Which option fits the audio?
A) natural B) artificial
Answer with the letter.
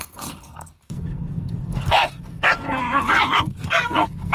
B